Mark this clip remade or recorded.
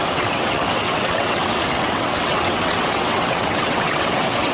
remade